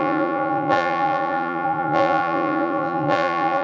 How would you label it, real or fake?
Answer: fake